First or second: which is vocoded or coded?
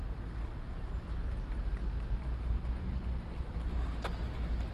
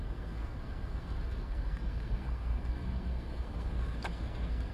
second